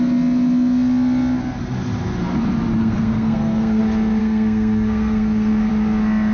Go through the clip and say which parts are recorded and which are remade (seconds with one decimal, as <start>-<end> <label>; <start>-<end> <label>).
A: 0.0-2.8 recorded; 2.8-3.8 remade; 3.8-4.2 recorded; 4.2-5.7 remade; 5.7-6.3 recorded